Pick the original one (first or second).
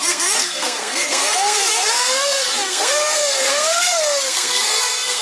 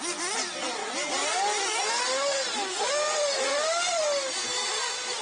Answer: second